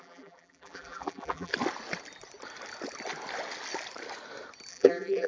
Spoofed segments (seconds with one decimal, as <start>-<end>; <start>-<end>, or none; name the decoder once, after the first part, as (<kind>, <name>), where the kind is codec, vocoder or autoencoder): 0.0-1.5 (vocoder, BigVGAN v2); 4.7-5.3